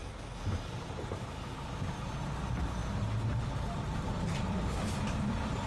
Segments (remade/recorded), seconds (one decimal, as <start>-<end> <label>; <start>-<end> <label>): 0.0-5.7 remade